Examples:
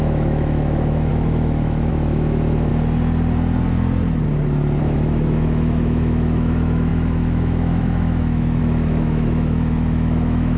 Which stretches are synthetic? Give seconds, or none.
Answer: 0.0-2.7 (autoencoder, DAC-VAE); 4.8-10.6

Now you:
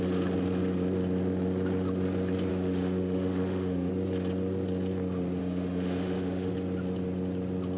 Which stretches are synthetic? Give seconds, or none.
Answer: 2.5-3.9 (autoencoder, DAC-VAE); 5.4-6.5

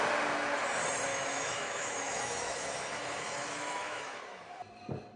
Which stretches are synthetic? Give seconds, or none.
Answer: 1.1-4.2 (autoencoder, DAC-VAE)

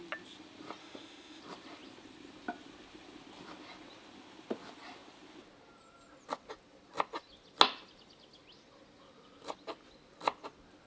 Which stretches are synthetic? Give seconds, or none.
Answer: 0.8-1.4 (autoencoder, DAC-VAE)

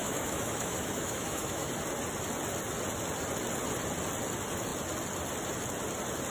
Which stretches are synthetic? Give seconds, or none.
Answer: 0.0-1.7 (autoencoder, DAC-VAE)

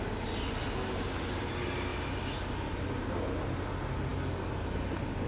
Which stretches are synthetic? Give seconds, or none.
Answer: none